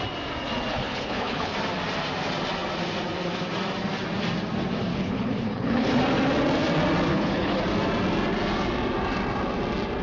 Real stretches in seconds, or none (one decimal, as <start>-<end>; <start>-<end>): 0.0-0.7; 1.5-4.9; 6.0-7.1; 7.6-10.0